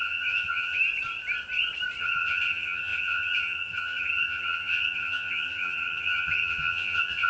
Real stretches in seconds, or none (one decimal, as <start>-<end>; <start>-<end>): 0.8-2.0